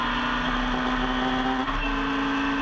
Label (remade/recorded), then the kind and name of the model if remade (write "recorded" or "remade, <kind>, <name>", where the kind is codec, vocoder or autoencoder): recorded